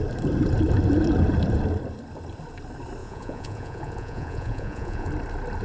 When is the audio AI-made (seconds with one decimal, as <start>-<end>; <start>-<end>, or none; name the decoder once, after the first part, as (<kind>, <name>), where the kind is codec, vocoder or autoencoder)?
3.0-5.1 (vocoder, Vocos)